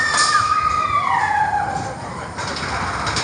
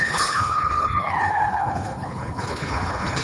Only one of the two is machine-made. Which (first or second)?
second